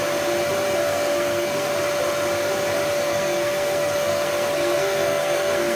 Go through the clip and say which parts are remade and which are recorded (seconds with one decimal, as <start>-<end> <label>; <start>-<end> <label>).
0.0-0.8 recorded; 0.8-1.7 remade; 1.7-3.1 recorded; 3.1-5.8 remade